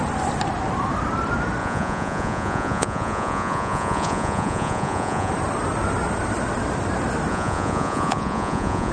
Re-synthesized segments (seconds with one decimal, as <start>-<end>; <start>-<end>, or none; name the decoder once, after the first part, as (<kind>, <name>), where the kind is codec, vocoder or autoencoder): 1.6-5.3 (vocoder, Vocos); 7.3-8.9